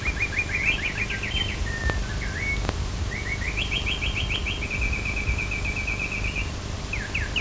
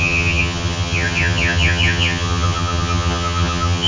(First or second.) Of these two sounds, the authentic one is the first